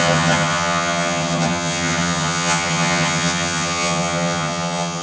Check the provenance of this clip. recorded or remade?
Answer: remade